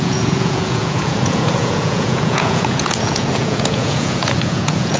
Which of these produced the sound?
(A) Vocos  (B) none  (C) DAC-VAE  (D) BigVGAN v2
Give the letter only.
A